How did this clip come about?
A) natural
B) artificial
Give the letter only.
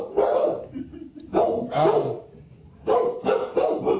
A